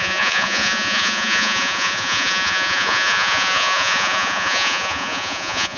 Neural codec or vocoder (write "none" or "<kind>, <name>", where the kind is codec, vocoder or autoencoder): vocoder, Vocos